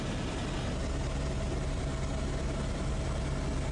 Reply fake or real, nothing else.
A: real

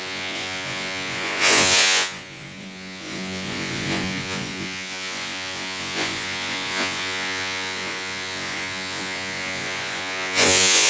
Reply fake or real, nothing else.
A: fake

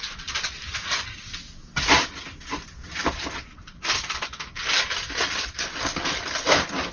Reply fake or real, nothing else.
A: real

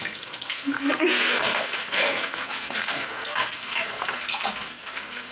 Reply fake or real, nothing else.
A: fake